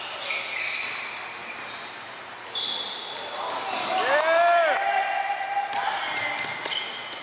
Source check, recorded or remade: recorded